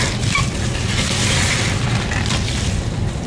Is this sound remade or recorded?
recorded